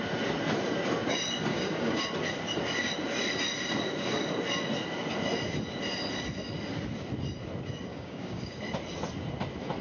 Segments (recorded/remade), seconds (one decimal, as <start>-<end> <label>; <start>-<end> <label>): 0.0-1.5 recorded; 1.5-2.0 remade; 2.0-7.9 recorded; 7.9-8.6 remade; 8.6-9.8 recorded

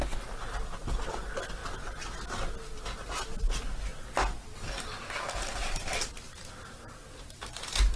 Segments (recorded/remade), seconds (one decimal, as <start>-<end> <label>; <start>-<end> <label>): 0.0-8.0 recorded

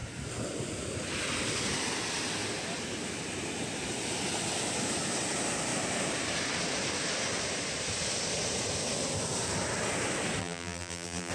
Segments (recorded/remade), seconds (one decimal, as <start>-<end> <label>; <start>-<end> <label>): 0.0-10.4 recorded; 10.4-11.3 remade

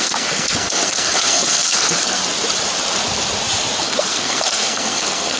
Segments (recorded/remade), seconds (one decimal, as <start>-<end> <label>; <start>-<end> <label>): 0.0-2.2 remade; 2.2-3.8 recorded; 3.8-5.4 remade

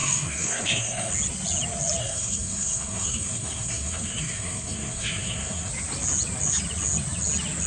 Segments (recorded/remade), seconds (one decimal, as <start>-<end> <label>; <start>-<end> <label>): 0.0-1.1 remade; 1.1-2.0 recorded; 2.0-5.7 remade; 5.7-7.7 recorded